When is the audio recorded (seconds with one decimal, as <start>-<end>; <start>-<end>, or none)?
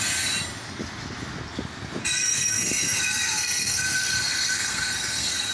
0.0-2.0